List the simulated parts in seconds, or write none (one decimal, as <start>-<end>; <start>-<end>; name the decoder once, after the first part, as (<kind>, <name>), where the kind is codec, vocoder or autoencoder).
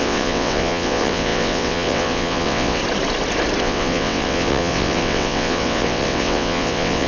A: 0.0-2.8 (vocoder, WaveNeXt); 3.6-7.1